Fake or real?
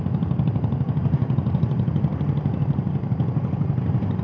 real